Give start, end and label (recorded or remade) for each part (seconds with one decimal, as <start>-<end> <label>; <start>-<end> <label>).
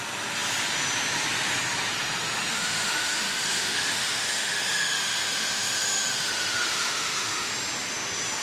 0.0-2.5 recorded; 2.5-7.5 remade; 7.5-8.4 recorded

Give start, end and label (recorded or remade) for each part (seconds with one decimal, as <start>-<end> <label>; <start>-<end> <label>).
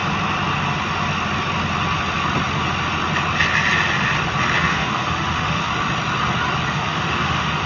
0.0-4.6 recorded; 4.6-5.7 remade; 5.7-6.7 recorded; 6.7-7.7 remade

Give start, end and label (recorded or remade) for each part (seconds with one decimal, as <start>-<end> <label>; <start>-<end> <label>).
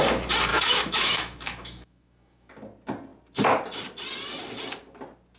0.0-0.5 recorded; 0.5-2.5 remade; 2.5-5.4 recorded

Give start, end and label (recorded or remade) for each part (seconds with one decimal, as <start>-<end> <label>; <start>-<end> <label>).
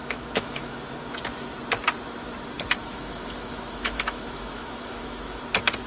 0.0-0.9 remade; 0.9-2.8 recorded; 2.8-5.4 remade; 5.4-5.9 recorded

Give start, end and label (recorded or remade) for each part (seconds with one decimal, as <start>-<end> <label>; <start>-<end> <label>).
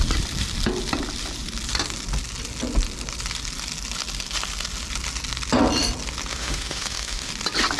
0.0-6.3 recorded; 6.3-7.3 remade; 7.3-7.8 recorded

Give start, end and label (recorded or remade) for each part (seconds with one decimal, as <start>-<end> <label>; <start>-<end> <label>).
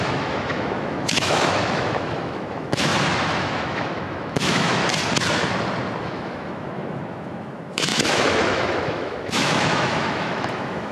0.0-2.9 remade; 2.9-3.4 recorded; 3.4-4.8 remade; 4.8-6.0 recorded; 6.0-10.9 remade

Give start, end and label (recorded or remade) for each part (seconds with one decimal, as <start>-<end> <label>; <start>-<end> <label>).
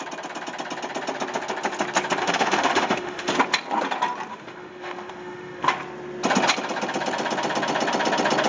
0.0-2.2 recorded; 2.2-3.3 remade; 3.3-4.3 recorded; 4.3-5.7 remade; 5.7-8.5 recorded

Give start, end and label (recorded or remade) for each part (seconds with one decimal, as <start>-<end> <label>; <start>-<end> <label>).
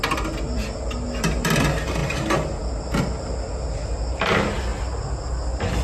0.0-5.8 recorded